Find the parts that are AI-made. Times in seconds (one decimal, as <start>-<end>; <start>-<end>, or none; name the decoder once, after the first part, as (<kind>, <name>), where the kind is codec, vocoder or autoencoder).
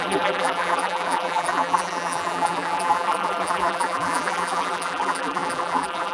0.0-6.1 (vocoder, BigVGAN v2)